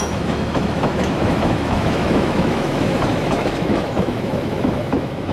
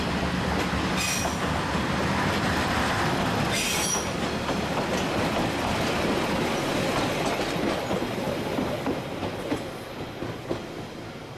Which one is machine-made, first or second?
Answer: first